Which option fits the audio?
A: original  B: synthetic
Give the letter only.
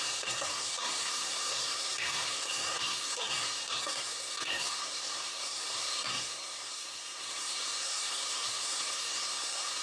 B